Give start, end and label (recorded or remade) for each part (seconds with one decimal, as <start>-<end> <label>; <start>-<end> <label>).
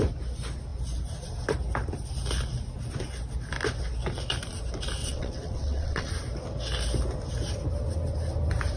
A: 0.0-5.0 recorded; 5.0-6.1 remade; 6.1-8.8 recorded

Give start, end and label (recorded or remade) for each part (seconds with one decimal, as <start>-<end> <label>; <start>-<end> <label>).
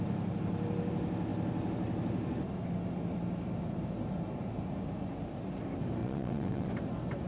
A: 0.0-6.0 recorded; 6.0-6.7 remade; 6.7-7.3 recorded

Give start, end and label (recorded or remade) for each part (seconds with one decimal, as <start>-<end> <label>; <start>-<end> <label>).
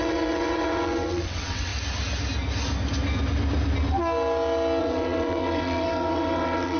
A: 0.0-1.7 remade; 1.7-4.8 recorded; 4.8-6.8 remade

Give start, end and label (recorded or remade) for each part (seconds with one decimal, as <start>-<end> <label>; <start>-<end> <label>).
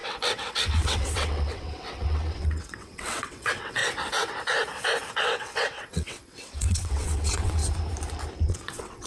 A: 0.0-3.8 remade; 3.8-5.1 recorded; 5.1-7.6 remade; 7.6-8.5 recorded; 8.5-9.1 remade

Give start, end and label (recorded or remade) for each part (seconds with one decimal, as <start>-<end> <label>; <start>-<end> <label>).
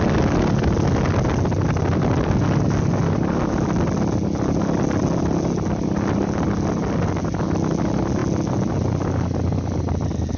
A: 0.0-10.4 recorded